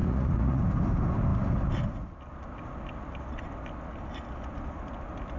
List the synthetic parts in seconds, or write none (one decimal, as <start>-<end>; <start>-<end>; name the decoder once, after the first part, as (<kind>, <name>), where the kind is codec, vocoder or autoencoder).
0.0-0.6 (vocoder, Vocos)